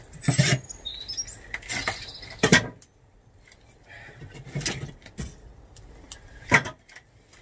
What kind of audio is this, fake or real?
real